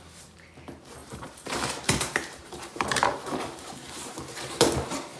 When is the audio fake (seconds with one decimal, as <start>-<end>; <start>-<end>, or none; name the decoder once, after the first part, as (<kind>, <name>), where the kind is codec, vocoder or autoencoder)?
1.0-4.1 (vocoder, BigVGAN v2)